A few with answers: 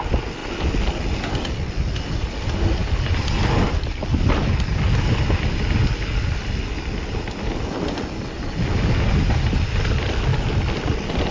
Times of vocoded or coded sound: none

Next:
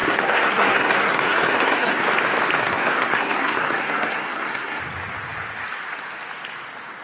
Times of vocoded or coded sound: 0.0-2.0 (codec, SNAC); 2.6-4.8

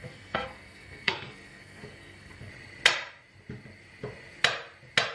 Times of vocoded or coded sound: 0.0-2.5 (codec, SNAC)

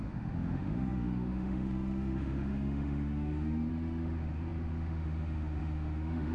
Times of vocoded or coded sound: 0.0-6.3 (autoencoder, DAC-VAE)

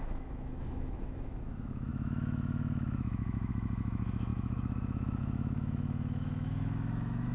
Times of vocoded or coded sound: 0.0-7.3 (autoencoder, DAC-VAE)